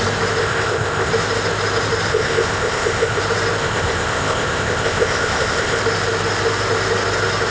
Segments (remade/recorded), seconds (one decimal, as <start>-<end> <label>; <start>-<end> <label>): 0.0-0.4 recorded; 0.4-1.1 remade; 1.1-2.1 recorded; 2.1-3.2 remade; 3.2-3.6 recorded; 3.6-5.8 remade; 5.8-7.5 recorded